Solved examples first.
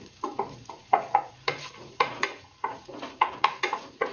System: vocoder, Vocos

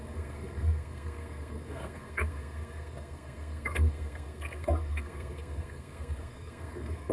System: codec, SNAC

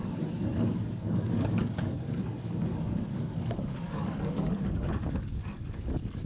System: codec, DAC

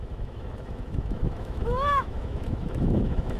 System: autoencoder, DAC-VAE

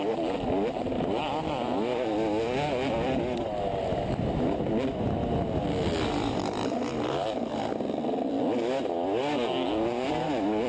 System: none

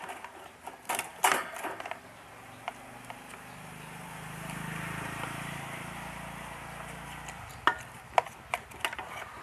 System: none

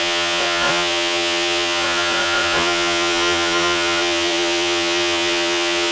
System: vocoder, Vocos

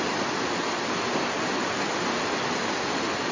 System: none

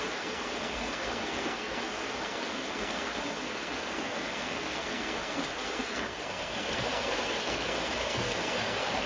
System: codec, SNAC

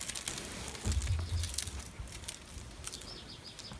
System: none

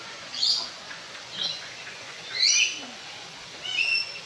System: vocoder, Vocos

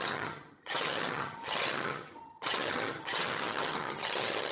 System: vocoder, HiFi-GAN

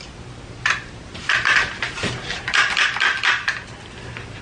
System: none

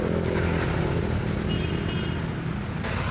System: none